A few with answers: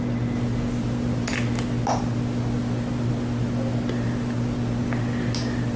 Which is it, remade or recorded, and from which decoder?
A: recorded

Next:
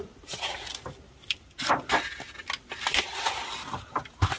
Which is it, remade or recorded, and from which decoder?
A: recorded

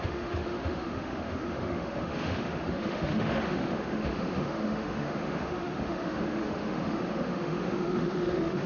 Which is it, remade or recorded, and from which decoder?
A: remade, autoencoder, DAC-VAE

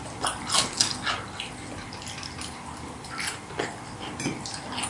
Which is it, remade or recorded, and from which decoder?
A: recorded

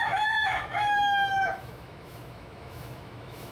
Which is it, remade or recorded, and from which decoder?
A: remade, autoencoder, DAC-VAE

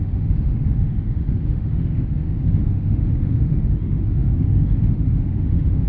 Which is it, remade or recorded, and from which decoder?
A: remade, autoencoder, DAC-VAE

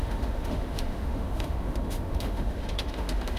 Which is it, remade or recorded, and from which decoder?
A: remade, autoencoder, DAC-VAE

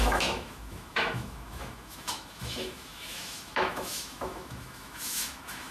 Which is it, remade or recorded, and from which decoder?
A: remade, autoencoder, DAC-VAE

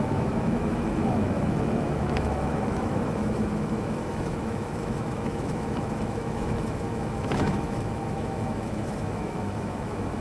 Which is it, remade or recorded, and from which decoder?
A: remade, autoencoder, DAC-VAE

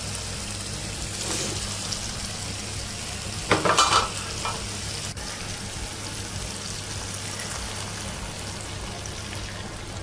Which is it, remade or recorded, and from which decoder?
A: recorded